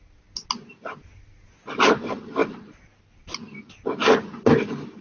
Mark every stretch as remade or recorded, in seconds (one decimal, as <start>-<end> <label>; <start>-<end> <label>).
0.0-5.0 recorded